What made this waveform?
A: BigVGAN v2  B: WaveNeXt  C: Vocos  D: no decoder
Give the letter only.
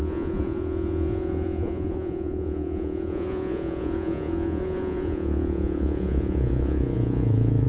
C